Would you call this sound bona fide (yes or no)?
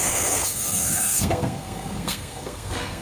no